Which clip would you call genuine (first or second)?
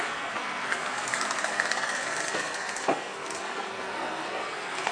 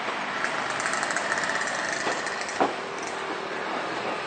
second